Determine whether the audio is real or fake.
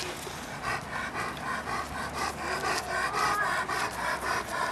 real